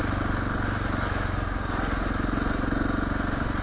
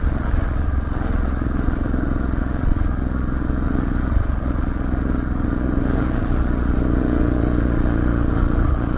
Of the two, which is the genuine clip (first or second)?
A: first